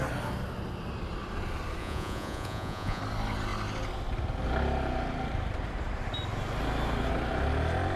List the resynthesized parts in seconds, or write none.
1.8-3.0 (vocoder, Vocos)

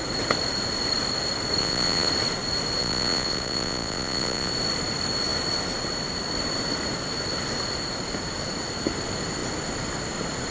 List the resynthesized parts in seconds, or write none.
1.6-2.1 (vocoder, Vocos); 2.8-4.5

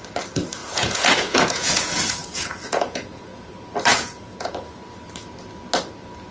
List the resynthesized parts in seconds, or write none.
0.6-1.8 (vocoder, Vocos); 2.2-3.5; 3.9-4.5

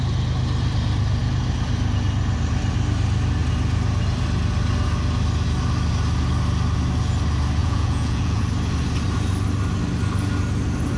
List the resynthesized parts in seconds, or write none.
7.6-8.4 (vocoder, Vocos)

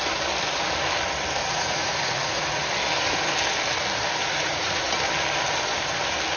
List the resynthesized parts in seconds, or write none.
1.4-2.6 (vocoder, Vocos); 4.2-4.8

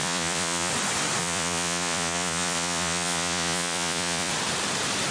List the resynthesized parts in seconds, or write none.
0.0-0.7 (vocoder, Vocos); 1.2-4.3